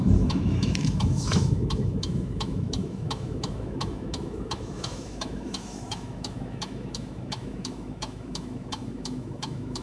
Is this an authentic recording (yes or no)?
no